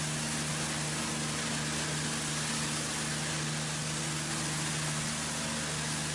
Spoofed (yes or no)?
no